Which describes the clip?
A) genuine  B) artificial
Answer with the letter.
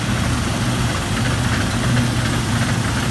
A